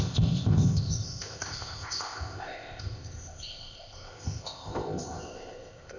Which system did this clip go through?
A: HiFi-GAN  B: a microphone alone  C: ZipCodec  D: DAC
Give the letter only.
C